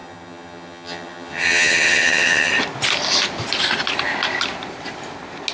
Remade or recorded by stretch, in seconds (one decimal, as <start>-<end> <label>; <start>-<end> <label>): 0.0-2.5 remade; 2.5-5.5 recorded

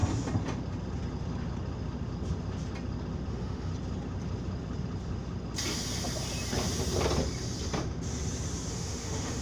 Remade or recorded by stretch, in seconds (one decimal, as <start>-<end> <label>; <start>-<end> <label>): 0.0-3.3 recorded; 3.3-3.7 remade; 3.7-8.7 recorded; 8.7-9.4 remade

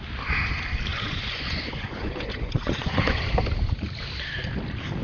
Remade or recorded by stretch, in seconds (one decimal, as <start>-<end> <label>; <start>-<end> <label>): 0.0-0.9 recorded; 0.9-3.3 remade; 3.3-5.0 recorded

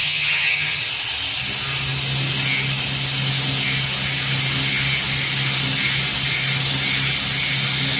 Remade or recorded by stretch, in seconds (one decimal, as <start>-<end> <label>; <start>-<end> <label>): 0.0-0.8 remade; 0.8-8.0 recorded